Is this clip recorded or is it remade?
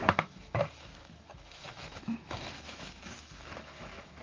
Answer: remade